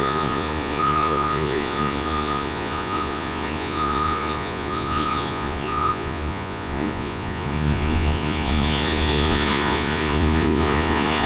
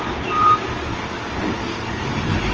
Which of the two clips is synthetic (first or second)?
first